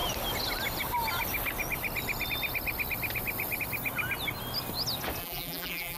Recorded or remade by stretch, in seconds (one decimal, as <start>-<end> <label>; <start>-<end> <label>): 0.0-5.2 recorded; 5.2-6.0 remade